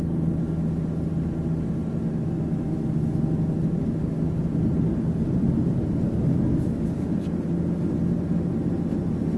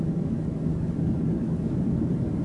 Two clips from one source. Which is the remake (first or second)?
second